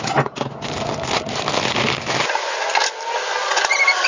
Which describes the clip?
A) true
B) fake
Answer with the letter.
A